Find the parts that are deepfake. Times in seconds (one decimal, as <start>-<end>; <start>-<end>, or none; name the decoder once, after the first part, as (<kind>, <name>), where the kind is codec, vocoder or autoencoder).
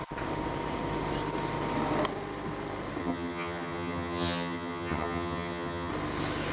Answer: 3.0-5.9 (vocoder, HiFi-GAN)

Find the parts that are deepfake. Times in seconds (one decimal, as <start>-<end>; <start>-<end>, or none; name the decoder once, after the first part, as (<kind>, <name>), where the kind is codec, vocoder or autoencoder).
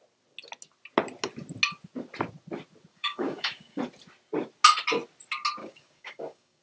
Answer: 2.9-3.8 (codec, DAC); 5.6-6.6